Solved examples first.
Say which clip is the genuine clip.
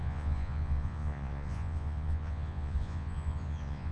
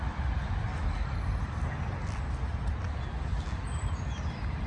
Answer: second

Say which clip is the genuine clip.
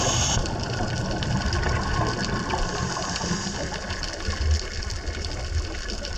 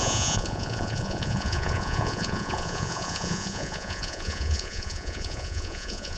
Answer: first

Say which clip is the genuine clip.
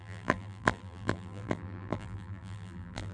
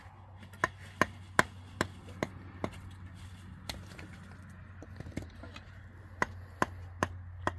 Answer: second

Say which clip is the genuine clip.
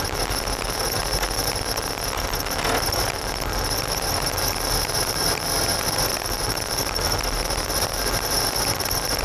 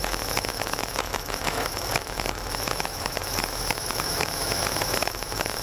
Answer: first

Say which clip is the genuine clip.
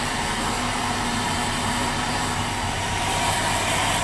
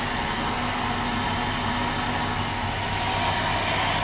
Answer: second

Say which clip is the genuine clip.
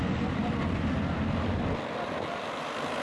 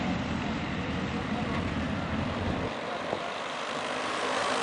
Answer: first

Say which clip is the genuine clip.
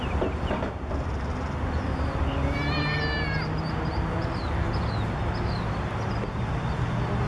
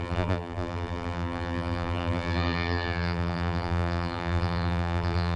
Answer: first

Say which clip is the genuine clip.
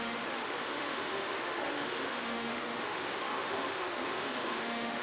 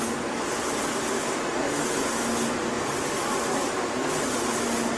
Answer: second